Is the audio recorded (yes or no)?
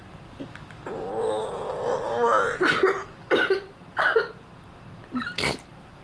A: yes